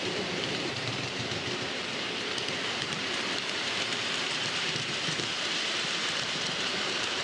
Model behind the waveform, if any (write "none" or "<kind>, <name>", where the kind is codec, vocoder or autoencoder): vocoder, BigVGAN v2